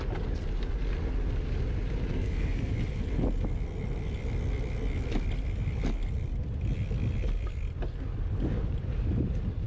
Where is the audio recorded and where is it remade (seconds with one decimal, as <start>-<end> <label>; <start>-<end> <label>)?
0.0-2.1 recorded; 2.1-2.7 remade; 2.7-9.7 recorded